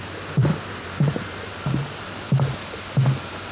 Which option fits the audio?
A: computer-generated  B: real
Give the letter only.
B